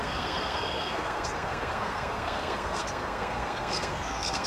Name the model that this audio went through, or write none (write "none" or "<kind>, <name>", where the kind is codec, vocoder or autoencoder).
codec, SNAC